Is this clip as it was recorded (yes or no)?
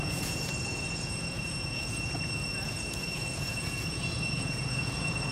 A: no